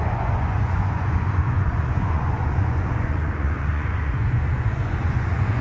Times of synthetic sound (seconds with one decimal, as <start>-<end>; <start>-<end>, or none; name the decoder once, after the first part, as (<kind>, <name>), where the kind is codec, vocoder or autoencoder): 0.0-5.6 (vocoder, Vocos)